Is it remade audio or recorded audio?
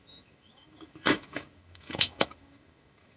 remade